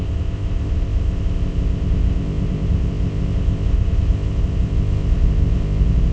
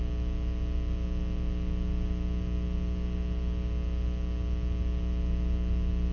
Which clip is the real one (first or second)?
second